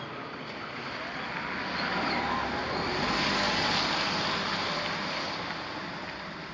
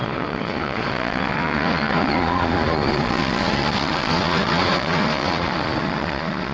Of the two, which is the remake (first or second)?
second